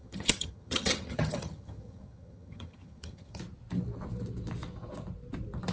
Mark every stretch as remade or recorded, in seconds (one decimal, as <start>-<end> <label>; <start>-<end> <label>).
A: 0.0-3.4 remade; 3.4-5.7 recorded